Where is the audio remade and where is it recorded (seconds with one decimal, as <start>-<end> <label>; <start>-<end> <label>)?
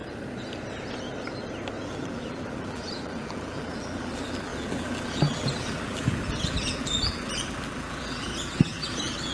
0.0-1.8 recorded; 1.8-9.3 remade